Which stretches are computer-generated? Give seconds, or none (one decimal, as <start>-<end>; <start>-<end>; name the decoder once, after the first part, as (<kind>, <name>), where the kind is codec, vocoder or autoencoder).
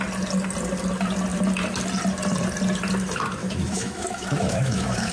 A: 3.4-5.1 (autoencoder, DAC-VAE)